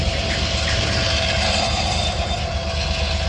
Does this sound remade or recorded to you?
recorded